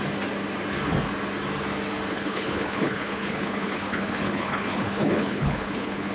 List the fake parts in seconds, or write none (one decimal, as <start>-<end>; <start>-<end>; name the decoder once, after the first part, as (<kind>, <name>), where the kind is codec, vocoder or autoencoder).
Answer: 2.1-6.1 (codec, HILCodec)